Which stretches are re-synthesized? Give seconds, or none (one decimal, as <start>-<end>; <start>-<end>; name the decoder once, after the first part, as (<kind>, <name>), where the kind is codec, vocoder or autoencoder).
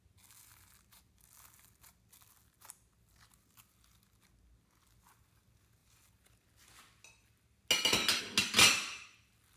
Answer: none